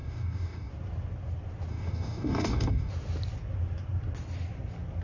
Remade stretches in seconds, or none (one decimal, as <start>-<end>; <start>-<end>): 0.0-0.7; 1.7-2.9